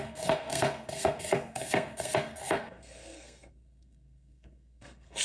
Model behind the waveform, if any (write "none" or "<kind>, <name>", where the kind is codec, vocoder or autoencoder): codec, SNAC